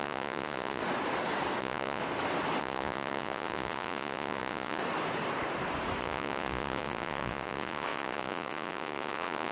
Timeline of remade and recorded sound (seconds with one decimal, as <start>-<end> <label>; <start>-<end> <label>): 0.0-0.8 remade; 0.8-1.6 recorded; 1.6-2.0 remade; 2.0-2.6 recorded; 2.6-4.8 remade; 4.8-6.0 recorded; 6.0-9.5 remade